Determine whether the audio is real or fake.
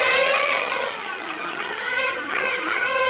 fake